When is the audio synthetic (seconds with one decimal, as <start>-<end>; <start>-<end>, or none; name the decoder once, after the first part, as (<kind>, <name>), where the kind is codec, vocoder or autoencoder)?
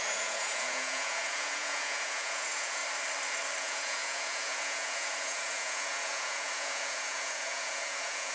0.0-2.8 (vocoder, Vocos); 3.6-8.3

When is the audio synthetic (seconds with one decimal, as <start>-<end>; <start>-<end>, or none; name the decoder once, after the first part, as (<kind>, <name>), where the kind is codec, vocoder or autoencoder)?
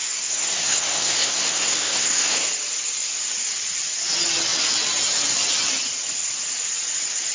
0.0-2.5 (codec, SNAC)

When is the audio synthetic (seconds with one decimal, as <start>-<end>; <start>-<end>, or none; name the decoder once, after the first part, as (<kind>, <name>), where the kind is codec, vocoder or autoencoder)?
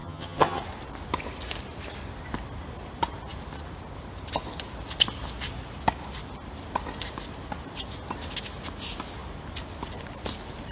0.0-0.6 (vocoder, HiFi-GAN)